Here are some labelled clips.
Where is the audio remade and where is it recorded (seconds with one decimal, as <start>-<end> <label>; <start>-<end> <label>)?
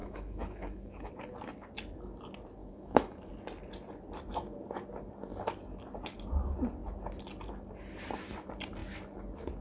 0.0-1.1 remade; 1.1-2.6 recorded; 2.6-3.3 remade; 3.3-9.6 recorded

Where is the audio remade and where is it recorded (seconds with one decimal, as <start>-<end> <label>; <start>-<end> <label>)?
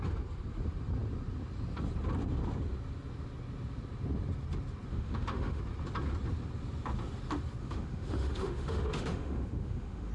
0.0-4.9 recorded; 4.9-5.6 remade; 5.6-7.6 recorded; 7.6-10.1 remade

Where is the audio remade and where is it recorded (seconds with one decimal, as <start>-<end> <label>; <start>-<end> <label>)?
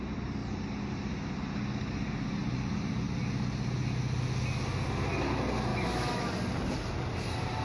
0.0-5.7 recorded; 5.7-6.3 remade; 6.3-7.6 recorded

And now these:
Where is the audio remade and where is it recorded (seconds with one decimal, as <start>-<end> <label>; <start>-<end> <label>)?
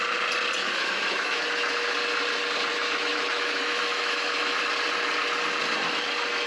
0.0-0.6 recorded; 0.6-1.4 remade; 1.4-2.7 recorded; 2.7-4.6 remade; 4.6-6.5 recorded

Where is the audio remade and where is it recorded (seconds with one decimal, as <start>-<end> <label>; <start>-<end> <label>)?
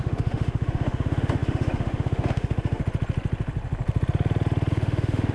0.0-2.8 remade; 2.8-4.7 recorded; 4.7-5.3 remade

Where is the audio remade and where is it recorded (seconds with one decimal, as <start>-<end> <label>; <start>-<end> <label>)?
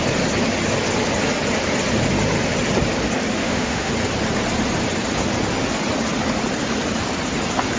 0.0-3.4 recorded; 3.4-3.9 remade; 3.9-7.8 recorded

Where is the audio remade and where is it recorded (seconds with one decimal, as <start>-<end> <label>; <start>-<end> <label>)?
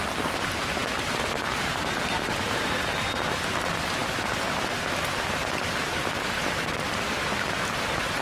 0.0-8.2 recorded